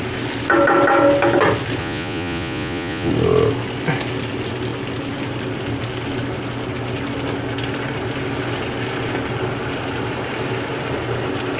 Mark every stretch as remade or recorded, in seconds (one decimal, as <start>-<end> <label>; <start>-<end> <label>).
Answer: 0.0-1.8 recorded; 1.8-3.1 remade; 3.1-11.6 recorded

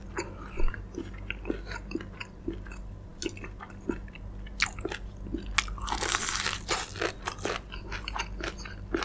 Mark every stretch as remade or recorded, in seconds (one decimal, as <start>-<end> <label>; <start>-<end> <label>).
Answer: 0.0-9.0 recorded

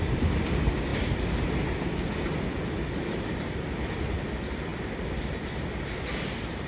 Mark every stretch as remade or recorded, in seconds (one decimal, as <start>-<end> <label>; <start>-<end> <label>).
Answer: 0.0-6.7 recorded

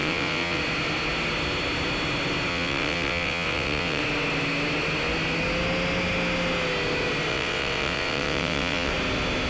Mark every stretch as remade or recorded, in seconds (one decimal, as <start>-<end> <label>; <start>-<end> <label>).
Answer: 0.0-0.6 remade; 0.6-2.5 recorded; 2.5-4.0 remade; 4.0-7.3 recorded; 7.3-8.9 remade; 8.9-9.5 recorded